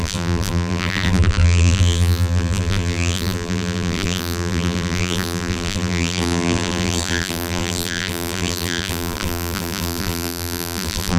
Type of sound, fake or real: fake